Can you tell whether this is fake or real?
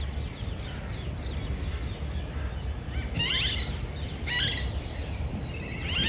real